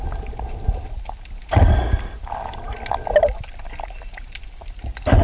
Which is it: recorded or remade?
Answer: recorded